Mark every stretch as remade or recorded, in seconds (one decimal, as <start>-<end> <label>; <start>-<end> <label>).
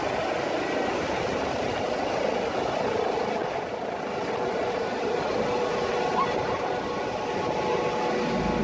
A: 0.0-8.6 recorded